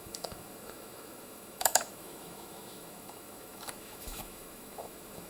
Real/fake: fake